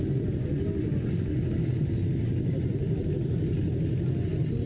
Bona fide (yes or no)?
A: yes